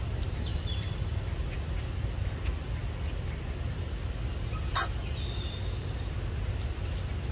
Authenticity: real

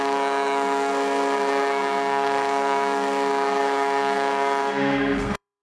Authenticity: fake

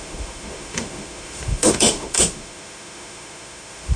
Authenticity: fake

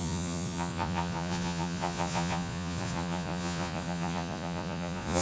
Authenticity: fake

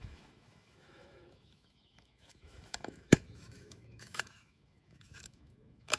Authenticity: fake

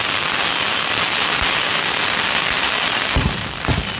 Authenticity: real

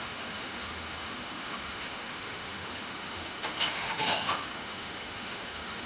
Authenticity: fake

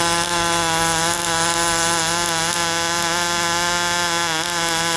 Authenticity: real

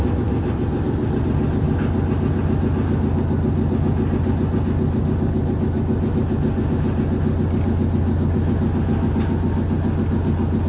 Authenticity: real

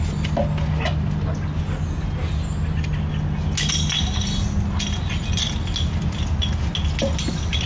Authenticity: real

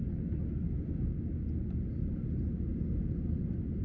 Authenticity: real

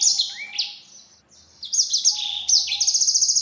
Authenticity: real